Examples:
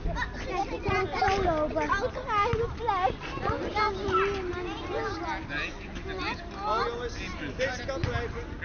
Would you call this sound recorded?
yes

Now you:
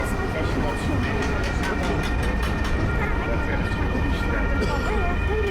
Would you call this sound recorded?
yes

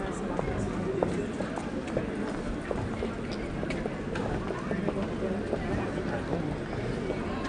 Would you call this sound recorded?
yes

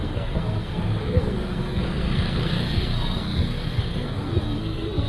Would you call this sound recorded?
no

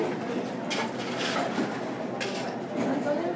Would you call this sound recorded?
yes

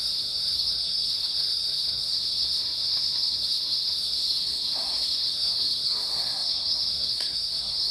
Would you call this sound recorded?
no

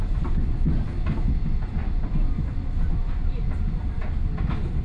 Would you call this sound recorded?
yes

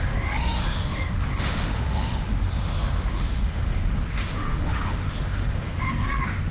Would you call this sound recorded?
no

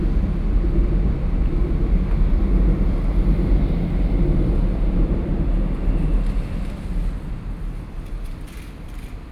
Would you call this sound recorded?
yes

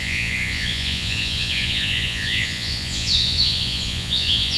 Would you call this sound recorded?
no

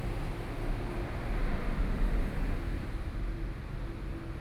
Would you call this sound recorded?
yes